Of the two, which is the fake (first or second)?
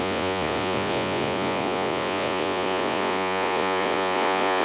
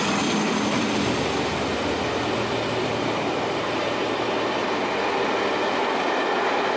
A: first